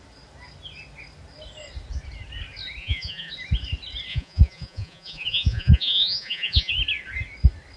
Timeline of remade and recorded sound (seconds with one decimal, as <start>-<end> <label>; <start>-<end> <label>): 0.0-2.8 recorded; 2.8-3.3 remade; 3.3-4.1 recorded; 4.1-6.7 remade; 6.7-7.8 recorded